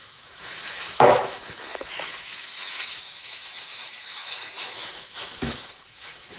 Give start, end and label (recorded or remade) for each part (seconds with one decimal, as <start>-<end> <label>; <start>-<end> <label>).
0.0-6.4 remade